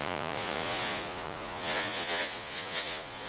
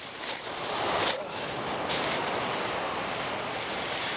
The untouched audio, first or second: second